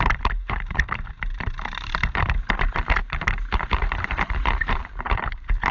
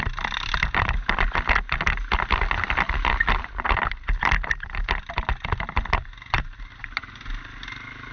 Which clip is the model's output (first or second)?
first